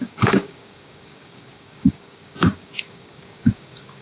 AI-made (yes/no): yes